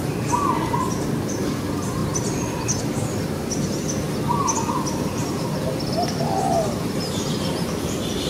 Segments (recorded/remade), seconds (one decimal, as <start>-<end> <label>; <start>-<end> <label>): 0.0-8.3 recorded